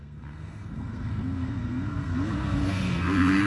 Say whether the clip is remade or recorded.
remade